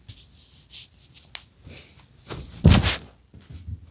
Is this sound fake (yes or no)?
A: no